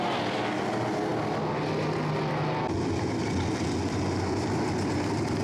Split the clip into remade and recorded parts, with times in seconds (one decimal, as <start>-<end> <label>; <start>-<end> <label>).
0.0-5.4 recorded